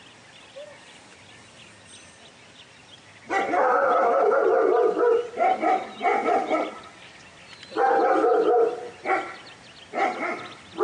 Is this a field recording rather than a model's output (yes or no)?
yes